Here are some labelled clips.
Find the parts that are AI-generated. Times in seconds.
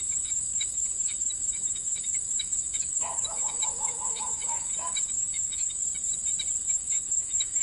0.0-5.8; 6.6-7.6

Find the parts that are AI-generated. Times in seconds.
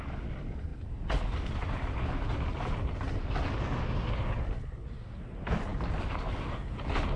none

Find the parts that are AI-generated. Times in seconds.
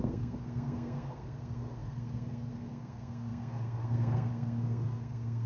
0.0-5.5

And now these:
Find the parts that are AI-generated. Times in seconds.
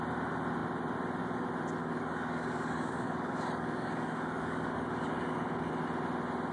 1.8-5.7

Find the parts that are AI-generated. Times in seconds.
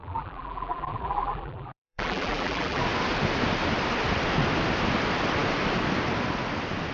0.0-2.8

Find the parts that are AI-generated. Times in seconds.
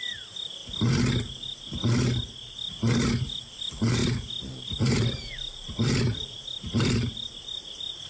none